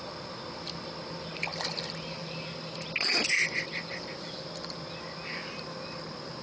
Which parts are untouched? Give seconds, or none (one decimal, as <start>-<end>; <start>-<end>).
0.0-6.4